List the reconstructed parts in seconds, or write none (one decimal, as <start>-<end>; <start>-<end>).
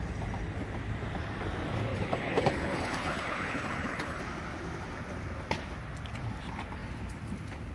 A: 1.9-4.2